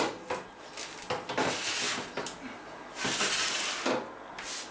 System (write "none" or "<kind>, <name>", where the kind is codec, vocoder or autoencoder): none